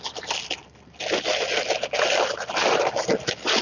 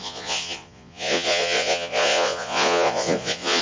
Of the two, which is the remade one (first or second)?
second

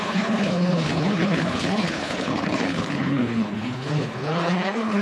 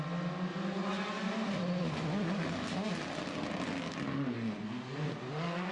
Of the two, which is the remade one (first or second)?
first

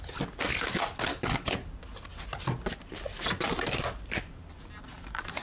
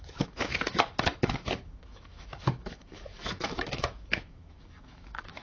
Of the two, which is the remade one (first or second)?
second